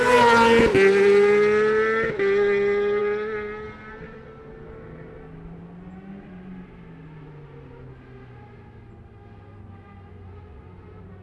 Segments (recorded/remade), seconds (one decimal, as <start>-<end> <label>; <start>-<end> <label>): 0.0-11.2 recorded